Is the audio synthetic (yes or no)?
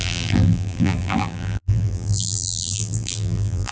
yes